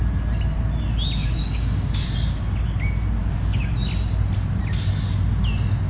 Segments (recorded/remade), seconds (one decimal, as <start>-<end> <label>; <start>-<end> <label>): 0.0-1.2 recorded; 1.2-2.0 remade; 2.0-3.2 recorded; 3.2-3.7 remade; 3.7-5.9 recorded